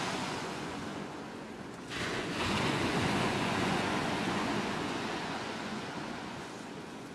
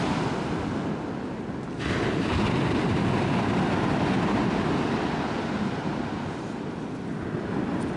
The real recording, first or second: second